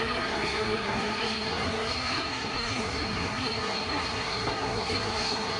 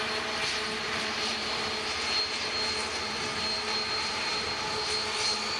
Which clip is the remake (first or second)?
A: first